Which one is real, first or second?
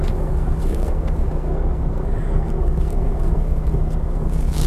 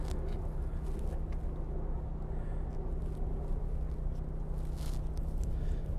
second